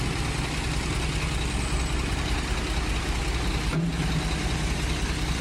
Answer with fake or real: real